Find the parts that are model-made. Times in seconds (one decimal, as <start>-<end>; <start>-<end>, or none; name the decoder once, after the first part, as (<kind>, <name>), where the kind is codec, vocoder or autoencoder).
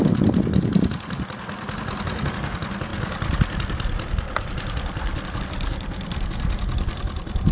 none